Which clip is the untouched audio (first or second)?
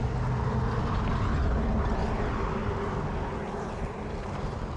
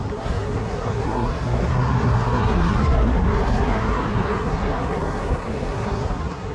first